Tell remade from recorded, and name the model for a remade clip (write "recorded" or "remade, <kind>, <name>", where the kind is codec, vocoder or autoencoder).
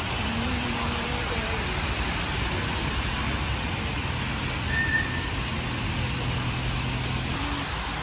recorded